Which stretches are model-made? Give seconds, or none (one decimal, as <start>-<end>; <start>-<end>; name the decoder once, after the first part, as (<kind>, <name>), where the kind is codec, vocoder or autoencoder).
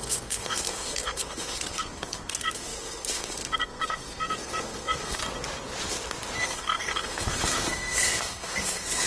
0.0-5.2 (codec, SNAC); 6.4-9.1